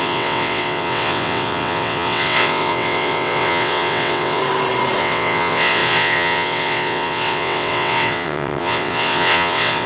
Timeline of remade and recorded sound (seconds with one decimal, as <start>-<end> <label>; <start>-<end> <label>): 0.0-4.4 remade; 4.4-5.0 recorded; 5.0-9.9 remade

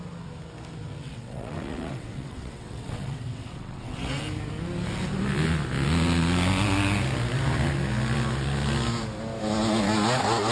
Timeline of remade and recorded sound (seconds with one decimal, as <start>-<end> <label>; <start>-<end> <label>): 0.0-1.0 recorded; 1.0-4.2 remade; 4.2-10.5 recorded

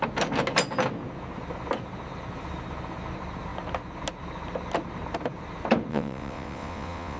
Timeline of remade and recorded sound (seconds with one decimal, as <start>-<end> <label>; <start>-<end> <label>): 0.0-5.9 recorded; 5.9-7.2 remade

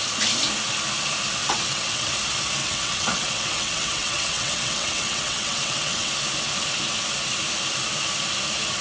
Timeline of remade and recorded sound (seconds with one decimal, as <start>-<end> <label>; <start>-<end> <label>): 0.0-1.4 recorded; 1.4-2.1 remade; 2.1-2.6 recorded; 2.6-6.1 remade; 6.1-8.8 recorded

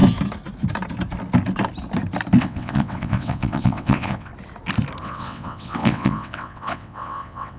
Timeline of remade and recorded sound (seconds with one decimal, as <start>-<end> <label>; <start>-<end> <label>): 0.0-2.4 recorded; 2.4-4.3 remade; 4.3-5.0 recorded; 5.0-7.6 remade